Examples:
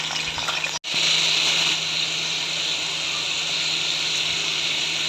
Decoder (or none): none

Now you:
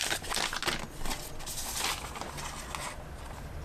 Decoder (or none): none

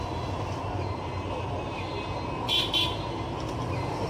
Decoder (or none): none